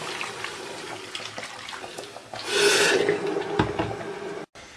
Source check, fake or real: real